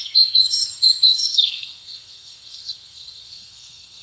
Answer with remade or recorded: remade